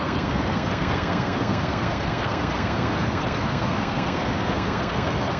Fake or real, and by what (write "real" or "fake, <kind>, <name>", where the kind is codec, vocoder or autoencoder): fake, codec, SNAC